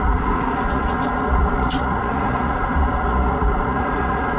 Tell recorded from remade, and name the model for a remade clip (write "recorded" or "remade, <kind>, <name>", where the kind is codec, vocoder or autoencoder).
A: remade, vocoder, Vocos